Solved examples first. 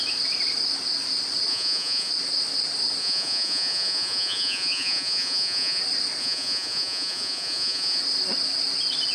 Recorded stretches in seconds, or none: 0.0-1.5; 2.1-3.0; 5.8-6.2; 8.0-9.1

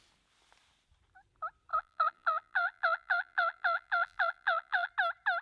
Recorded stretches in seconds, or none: 0.0-1.7; 4.9-5.4